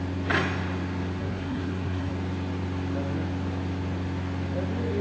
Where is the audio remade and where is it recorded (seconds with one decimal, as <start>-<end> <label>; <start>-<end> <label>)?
0.0-1.2 recorded; 1.2-2.1 remade; 2.1-5.0 recorded